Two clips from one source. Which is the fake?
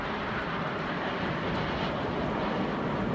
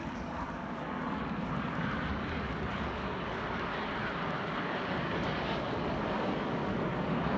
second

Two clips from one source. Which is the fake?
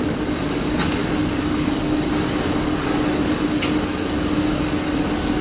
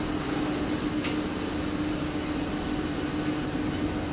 first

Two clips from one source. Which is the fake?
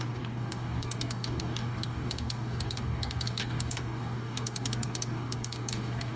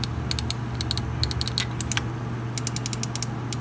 first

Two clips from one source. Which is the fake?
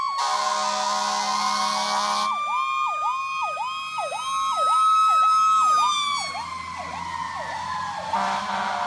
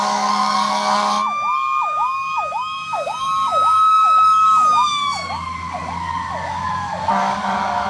second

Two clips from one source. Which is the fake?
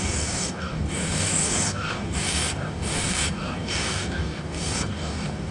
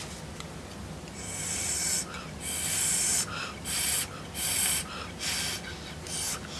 first